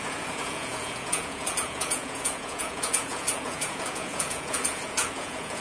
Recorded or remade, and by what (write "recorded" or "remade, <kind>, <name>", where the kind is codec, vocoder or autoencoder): remade, vocoder, Vocos